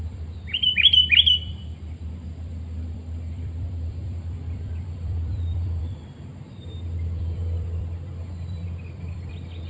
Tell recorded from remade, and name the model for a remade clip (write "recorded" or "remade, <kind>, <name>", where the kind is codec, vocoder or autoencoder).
remade, vocoder, BigVGAN v2